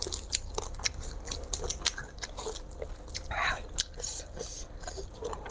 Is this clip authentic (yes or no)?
yes